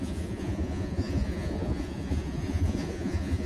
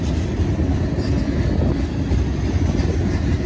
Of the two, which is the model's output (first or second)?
first